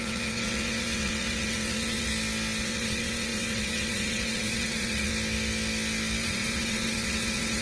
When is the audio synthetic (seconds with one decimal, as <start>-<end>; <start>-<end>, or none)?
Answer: 0.0-2.1; 2.6-5.1; 6.2-7.6